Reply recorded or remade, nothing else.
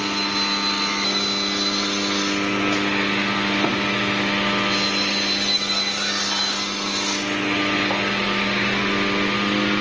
recorded